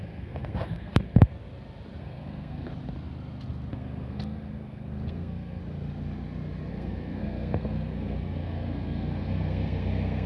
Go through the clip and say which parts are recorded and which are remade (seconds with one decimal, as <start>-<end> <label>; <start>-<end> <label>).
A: 0.0-1.3 remade; 1.3-2.0 recorded; 2.0-2.7 remade; 2.7-3.7 recorded; 3.7-5.6 remade; 5.6-6.7 recorded; 6.7-10.3 remade